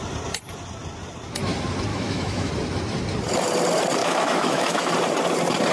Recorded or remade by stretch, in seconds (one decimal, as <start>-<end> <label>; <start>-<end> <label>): 0.0-1.9 recorded; 1.9-2.5 remade; 2.5-4.0 recorded; 4.0-4.9 remade; 4.9-5.7 recorded

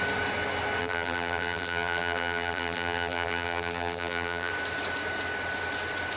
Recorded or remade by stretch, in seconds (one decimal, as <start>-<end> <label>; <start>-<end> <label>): 0.0-0.8 recorded; 0.8-4.5 remade; 4.5-6.2 recorded

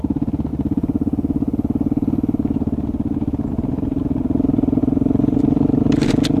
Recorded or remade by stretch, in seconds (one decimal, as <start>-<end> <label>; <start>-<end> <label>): 0.0-4.8 recorded; 4.8-5.4 remade; 5.4-6.4 recorded

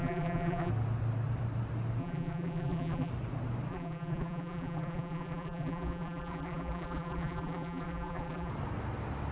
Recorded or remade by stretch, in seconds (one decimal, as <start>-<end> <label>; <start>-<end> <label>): 0.0-0.7 remade; 0.7-2.0 recorded; 2.0-3.1 remade; 3.1-3.7 recorded; 3.7-8.5 remade; 8.5-9.3 recorded

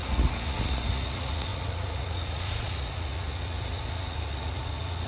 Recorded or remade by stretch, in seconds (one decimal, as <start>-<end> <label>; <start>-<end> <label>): 0.0-5.1 remade

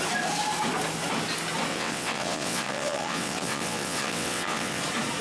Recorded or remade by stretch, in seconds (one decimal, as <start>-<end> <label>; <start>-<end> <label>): 0.0-1.7 recorded; 1.7-4.8 remade; 4.8-5.2 recorded

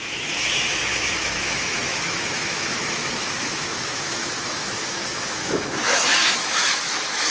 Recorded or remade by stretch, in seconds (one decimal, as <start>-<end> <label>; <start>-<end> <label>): 0.0-7.3 remade